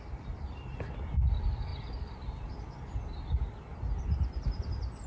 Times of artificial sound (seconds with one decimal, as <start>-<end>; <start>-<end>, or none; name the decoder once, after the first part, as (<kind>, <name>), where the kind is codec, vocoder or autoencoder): none